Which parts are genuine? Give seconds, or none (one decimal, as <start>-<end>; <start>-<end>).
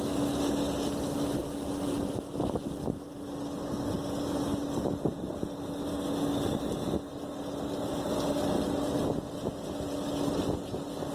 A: 0.0-11.1